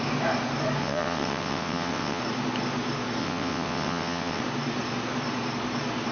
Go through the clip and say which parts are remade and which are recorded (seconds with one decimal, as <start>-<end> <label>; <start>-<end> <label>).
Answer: 0.0-0.8 recorded; 0.8-2.2 remade; 2.2-3.2 recorded; 3.2-4.4 remade; 4.4-6.1 recorded